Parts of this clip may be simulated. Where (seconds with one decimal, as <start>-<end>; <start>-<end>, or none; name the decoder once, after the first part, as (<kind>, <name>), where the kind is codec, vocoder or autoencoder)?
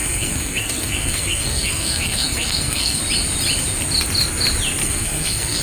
0.0-3.0 (codec, SNAC); 4.8-5.6